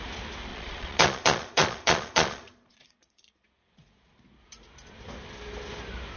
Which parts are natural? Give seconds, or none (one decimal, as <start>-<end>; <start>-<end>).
0.0-0.5; 4.2-6.2